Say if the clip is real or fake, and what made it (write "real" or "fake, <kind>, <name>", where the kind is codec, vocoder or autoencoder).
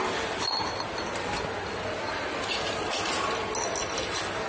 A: real